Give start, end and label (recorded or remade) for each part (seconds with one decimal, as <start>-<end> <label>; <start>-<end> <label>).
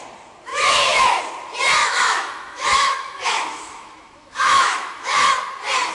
0.0-0.5 recorded; 0.5-1.2 remade; 1.2-1.8 recorded; 1.8-5.3 remade; 5.3-5.9 recorded